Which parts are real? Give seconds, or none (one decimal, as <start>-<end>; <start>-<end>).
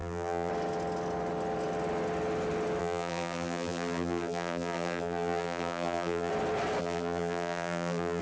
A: 0.5-2.8; 6.3-6.8